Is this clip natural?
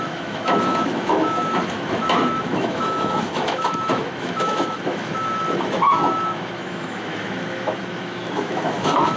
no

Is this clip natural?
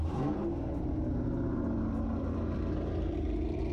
yes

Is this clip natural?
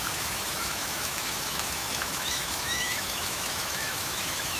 no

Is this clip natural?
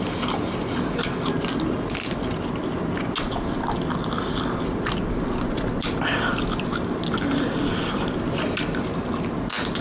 yes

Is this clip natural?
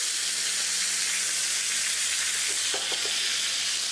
yes